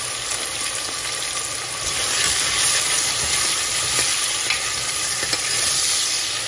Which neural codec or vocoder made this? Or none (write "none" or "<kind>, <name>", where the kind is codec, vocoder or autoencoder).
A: none